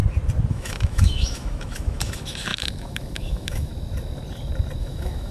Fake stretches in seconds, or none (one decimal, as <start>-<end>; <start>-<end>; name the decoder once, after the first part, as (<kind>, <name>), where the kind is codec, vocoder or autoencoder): 0.5-3.7 (autoencoder, DAC-VAE); 4.8-5.3